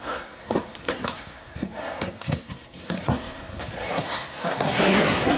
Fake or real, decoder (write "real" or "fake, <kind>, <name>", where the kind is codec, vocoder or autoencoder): fake, codec, SNAC